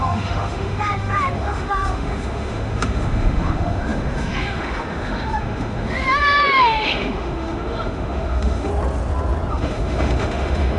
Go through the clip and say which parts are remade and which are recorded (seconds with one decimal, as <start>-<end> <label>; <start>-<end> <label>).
0.0-8.7 remade; 8.7-9.5 recorded; 9.5-10.8 remade